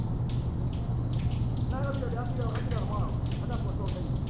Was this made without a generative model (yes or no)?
yes